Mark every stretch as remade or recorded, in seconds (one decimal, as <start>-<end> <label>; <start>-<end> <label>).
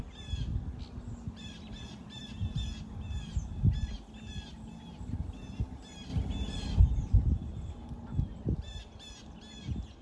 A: 0.0-10.0 recorded